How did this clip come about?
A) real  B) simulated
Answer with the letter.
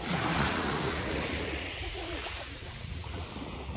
B